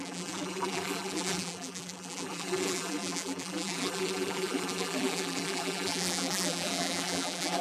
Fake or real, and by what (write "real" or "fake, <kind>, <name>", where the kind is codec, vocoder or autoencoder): fake, vocoder, BigVGAN v2